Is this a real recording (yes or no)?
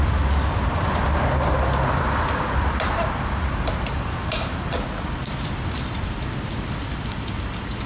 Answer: no